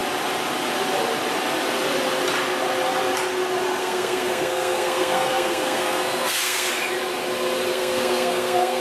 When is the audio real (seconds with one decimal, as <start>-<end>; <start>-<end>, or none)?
0.0-3.8; 6.7-7.7